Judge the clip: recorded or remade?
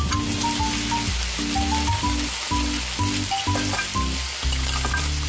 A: recorded